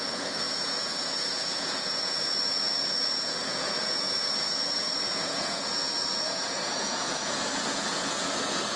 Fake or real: fake